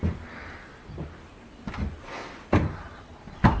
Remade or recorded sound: recorded